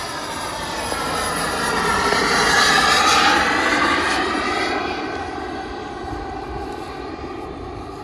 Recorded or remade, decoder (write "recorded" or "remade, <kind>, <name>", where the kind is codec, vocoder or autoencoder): recorded